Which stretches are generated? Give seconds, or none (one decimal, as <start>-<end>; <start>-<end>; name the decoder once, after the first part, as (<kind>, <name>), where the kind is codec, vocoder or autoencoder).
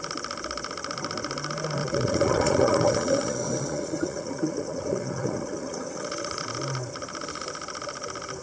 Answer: 1.8-6.4 (vocoder, Vocos)